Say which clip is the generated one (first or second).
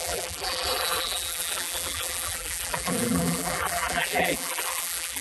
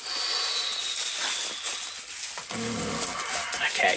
first